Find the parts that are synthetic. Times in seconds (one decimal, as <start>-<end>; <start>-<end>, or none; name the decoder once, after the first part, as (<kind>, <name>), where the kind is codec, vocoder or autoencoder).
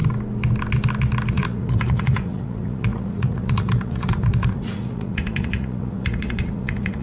1.3-7.0 (vocoder, Vocos)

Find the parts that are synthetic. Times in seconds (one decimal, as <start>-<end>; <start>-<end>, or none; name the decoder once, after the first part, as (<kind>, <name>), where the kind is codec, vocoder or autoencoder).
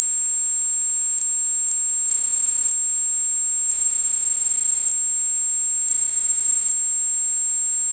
2.1-2.7 (vocoder, Vocos); 3.7-4.9; 5.9-6.7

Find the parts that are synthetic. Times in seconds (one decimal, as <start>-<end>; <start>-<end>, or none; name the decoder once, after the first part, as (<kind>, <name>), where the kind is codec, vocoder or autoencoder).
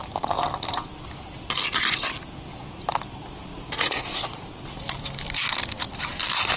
3.5-4.2 (vocoder, Vocos)